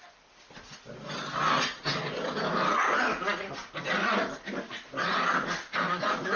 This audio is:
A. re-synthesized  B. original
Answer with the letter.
B